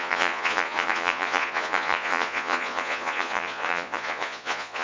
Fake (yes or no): yes